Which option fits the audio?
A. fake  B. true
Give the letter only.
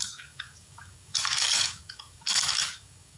A